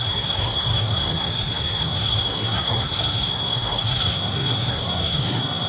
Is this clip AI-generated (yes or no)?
yes